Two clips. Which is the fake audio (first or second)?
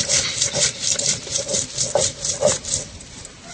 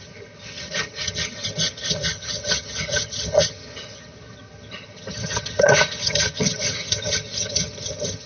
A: second